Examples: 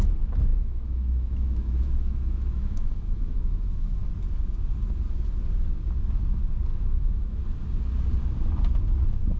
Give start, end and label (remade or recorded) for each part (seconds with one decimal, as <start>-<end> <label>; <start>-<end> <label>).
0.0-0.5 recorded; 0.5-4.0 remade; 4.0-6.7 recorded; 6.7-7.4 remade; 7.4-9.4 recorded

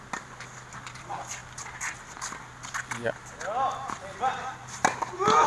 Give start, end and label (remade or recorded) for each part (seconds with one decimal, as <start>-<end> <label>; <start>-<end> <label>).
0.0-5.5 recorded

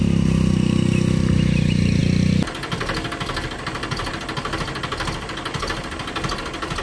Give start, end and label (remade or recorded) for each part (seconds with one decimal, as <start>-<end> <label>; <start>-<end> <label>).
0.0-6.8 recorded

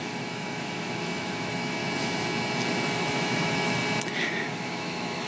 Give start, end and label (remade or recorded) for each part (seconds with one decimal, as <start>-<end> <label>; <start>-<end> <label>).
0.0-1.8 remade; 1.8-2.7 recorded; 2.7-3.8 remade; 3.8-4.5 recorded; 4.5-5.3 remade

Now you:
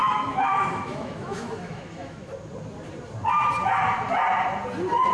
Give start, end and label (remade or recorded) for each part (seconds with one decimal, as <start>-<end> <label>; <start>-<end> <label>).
0.0-2.3 remade; 2.3-5.1 recorded